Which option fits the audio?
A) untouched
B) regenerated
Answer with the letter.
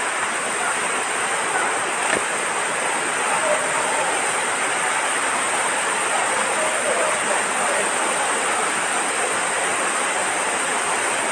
A